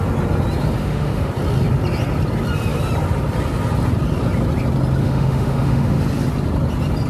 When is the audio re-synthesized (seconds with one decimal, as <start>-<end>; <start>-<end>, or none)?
0.8-1.3; 5.0-6.0